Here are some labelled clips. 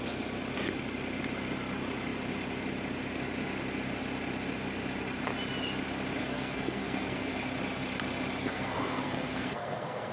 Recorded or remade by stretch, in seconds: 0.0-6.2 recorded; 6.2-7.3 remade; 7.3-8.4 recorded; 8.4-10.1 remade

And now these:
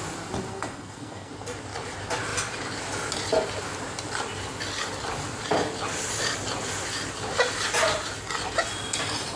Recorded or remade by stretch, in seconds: 0.0-0.5 recorded; 0.5-1.3 remade; 1.3-9.4 recorded

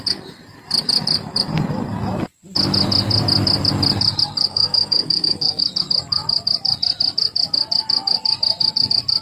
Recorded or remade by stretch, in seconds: 0.0-4.5 recorded; 4.5-5.6 remade; 5.6-9.2 recorded

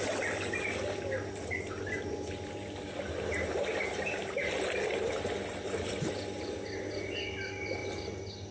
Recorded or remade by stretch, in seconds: 0.0-8.5 recorded

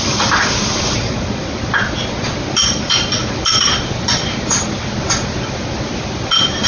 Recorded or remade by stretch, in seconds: 0.0-6.7 recorded